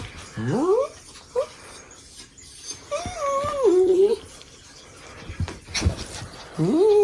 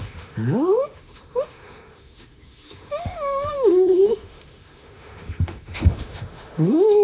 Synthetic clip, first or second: second